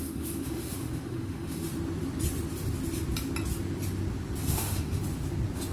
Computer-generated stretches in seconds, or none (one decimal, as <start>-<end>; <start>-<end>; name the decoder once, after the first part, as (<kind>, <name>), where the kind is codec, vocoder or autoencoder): 0.0-1.7 (autoencoder, DAC-VAE); 4.4-5.0